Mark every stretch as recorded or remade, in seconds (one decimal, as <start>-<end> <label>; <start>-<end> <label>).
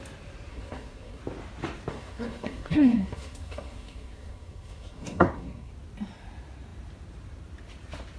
0.0-0.5 recorded; 0.5-1.2 remade; 1.2-1.9 recorded; 1.9-5.7 remade; 5.7-8.2 recorded